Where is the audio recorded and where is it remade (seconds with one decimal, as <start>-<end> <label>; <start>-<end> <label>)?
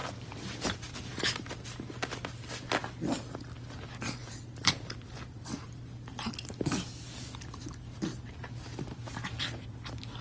0.0-1.7 remade; 1.7-4.2 recorded; 4.2-6.3 remade; 6.3-10.2 recorded